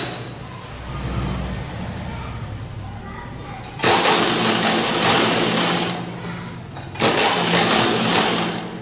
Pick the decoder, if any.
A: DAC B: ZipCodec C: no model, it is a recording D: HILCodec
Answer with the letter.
C